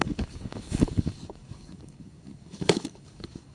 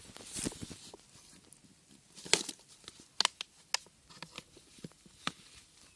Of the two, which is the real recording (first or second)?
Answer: second